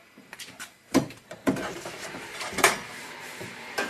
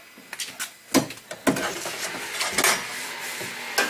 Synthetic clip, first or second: first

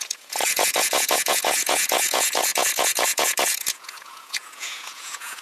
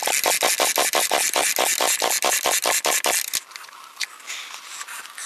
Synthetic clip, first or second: first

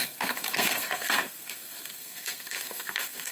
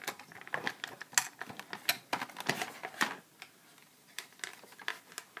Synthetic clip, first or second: first